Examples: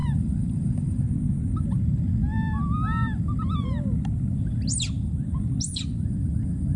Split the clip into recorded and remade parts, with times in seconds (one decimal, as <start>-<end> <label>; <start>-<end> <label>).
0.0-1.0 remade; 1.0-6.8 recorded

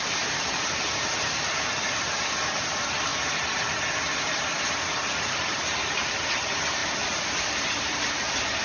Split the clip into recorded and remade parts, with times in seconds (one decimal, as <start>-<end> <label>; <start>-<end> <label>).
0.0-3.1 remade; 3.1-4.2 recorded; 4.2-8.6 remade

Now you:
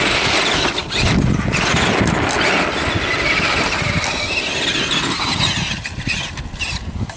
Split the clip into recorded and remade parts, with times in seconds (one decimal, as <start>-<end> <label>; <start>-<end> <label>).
0.0-7.2 recorded